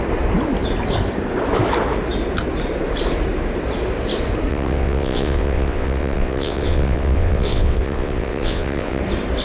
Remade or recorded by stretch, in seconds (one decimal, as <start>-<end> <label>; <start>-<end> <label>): 0.0-4.5 recorded; 4.5-9.0 remade; 9.0-9.4 recorded